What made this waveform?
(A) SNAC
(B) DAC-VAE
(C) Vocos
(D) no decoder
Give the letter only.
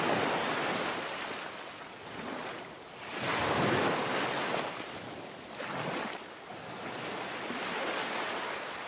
D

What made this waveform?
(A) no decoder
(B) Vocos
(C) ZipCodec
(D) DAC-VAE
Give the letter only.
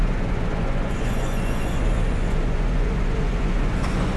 B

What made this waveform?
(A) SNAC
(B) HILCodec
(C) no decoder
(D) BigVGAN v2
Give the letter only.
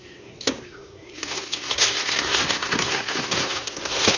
A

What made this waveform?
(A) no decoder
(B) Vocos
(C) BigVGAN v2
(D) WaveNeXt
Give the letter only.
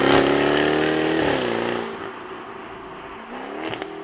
A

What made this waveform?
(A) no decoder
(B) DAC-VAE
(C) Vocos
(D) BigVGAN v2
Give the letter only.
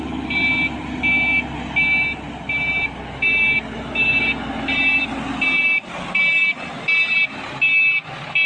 A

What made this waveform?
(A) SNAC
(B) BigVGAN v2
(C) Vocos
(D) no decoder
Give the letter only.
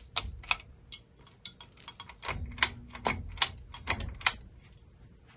D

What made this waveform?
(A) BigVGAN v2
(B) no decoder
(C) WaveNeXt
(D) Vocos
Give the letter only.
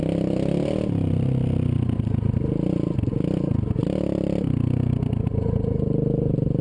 B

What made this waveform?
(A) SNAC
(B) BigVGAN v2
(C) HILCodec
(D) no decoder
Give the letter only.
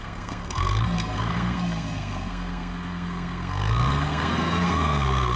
A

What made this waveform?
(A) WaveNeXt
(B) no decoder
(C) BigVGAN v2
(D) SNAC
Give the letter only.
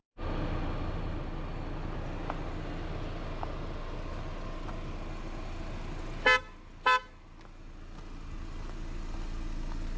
B